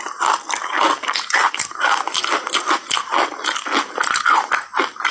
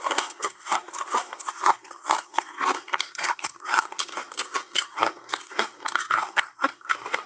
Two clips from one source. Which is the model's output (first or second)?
second